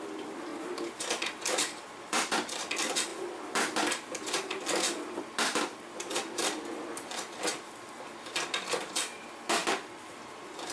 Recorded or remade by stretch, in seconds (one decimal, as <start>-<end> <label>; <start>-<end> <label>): 0.0-9.6 remade; 9.6-10.1 recorded; 10.1-10.7 remade